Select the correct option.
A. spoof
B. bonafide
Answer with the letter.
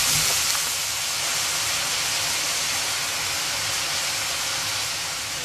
B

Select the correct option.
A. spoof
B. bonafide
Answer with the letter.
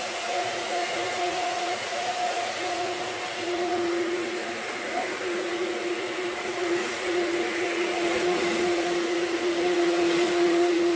A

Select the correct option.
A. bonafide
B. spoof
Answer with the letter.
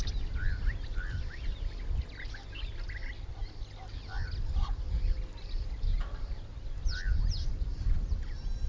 A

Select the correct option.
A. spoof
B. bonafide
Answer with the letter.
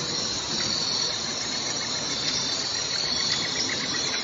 A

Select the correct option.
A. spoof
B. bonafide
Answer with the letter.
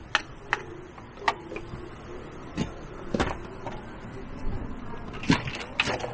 B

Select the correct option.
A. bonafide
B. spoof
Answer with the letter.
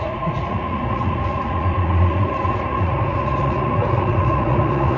B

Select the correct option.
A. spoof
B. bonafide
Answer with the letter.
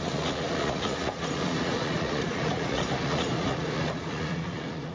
A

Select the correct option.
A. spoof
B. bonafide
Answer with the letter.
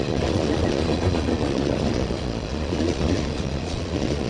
A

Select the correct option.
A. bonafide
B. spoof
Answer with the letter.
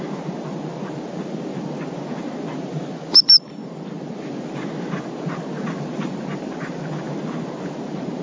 A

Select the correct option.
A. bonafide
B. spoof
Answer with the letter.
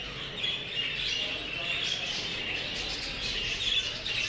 A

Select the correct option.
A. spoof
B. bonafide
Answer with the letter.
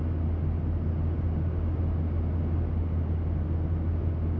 B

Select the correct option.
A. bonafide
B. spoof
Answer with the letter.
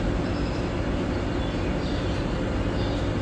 A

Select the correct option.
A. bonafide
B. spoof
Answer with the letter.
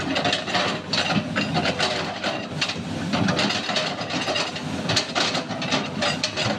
A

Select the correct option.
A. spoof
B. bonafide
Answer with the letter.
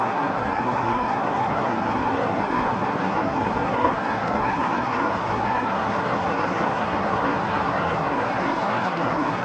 A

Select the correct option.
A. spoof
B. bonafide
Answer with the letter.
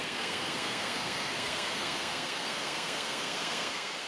A